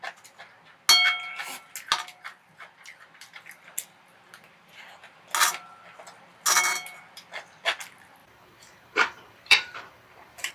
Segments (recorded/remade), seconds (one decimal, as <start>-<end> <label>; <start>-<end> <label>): 0.0-8.2 recorded; 8.2-10.5 remade